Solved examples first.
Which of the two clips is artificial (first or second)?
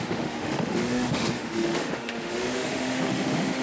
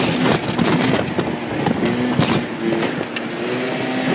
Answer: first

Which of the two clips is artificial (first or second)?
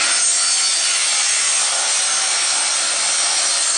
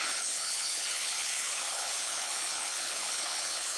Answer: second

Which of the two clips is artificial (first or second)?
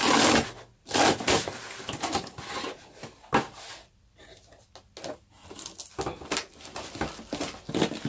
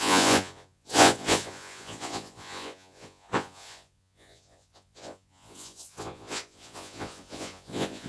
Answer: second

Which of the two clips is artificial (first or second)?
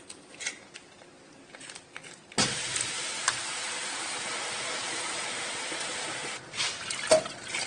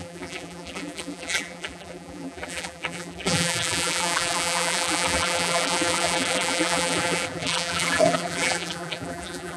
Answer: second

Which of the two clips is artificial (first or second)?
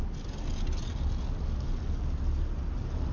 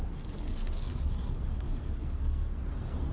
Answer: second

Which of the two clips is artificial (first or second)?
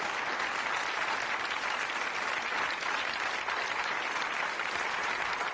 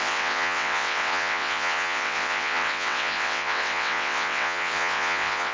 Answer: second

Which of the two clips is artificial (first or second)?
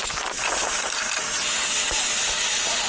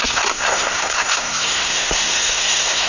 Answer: second